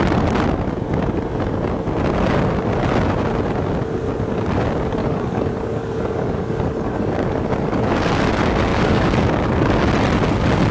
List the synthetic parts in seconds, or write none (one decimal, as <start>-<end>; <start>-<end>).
5.0-8.1; 8.7-9.9